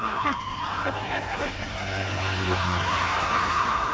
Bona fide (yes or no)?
no